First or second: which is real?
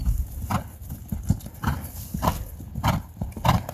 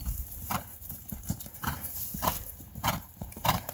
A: first